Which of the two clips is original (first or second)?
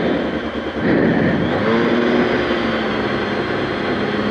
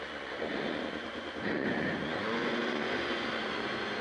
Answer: first